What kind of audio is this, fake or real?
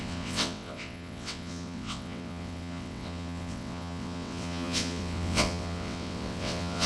fake